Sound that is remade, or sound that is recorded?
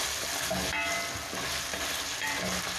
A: recorded